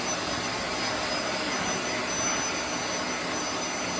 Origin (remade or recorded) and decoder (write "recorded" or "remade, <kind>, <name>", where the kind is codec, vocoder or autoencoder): recorded